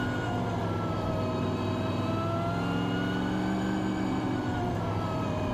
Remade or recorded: recorded